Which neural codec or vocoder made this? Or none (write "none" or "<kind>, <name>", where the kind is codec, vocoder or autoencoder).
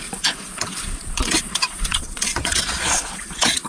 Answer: vocoder, Vocos